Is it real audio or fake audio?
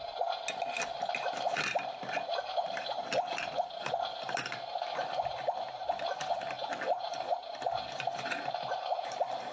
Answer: real